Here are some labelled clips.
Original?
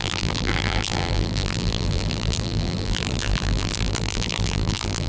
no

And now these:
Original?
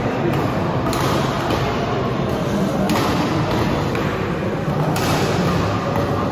yes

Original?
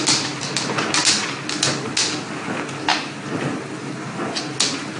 yes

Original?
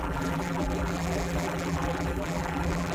no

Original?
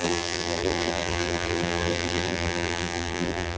no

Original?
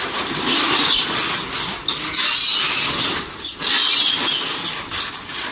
yes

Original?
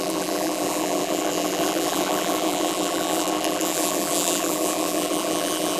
no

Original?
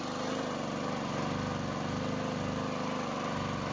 yes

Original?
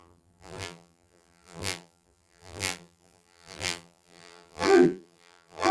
no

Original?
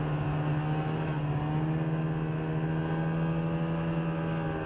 yes